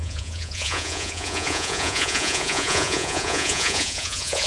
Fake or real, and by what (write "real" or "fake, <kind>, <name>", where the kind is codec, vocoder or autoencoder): fake, vocoder, Vocos